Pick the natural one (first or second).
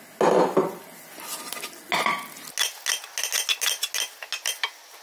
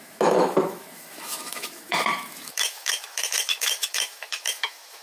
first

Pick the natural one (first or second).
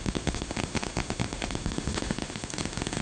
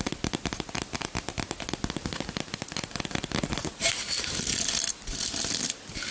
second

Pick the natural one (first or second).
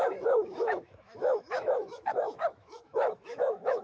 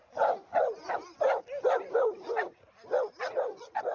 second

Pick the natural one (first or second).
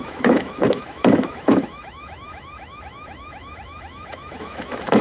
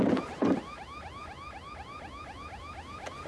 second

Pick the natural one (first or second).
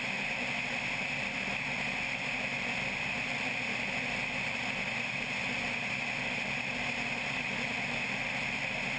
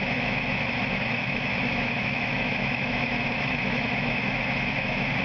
first